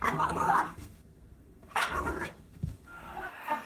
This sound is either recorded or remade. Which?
remade